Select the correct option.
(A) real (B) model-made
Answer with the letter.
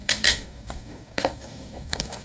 B